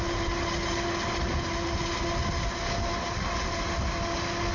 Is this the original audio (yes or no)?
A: yes